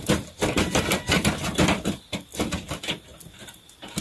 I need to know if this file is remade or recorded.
recorded